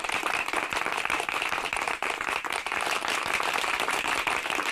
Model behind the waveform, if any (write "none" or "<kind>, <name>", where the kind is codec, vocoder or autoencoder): vocoder, BigVGAN v2